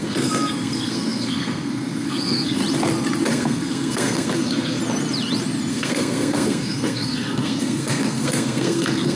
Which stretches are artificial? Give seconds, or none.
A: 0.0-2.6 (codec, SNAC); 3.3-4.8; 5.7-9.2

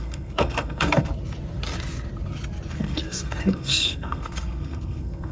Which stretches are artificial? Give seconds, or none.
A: 0.0-1.1 (codec, SNAC); 2.7-5.3

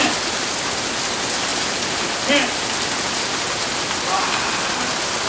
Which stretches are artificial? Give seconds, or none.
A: none

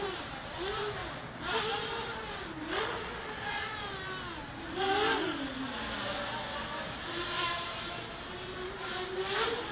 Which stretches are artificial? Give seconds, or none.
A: none

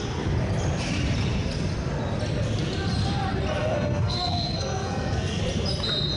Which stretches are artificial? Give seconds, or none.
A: 3.6-5.4 (codec, SNAC)